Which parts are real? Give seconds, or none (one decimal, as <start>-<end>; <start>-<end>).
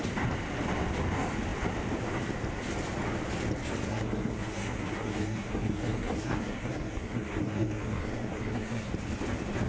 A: 0.0-3.9; 8.9-9.7